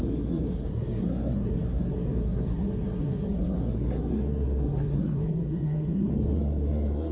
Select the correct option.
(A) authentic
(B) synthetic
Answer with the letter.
B